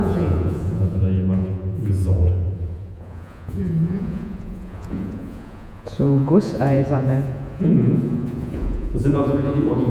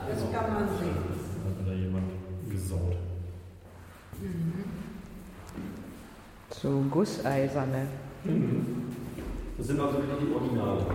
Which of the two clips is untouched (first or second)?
second